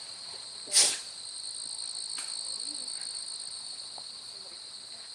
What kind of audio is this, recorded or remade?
recorded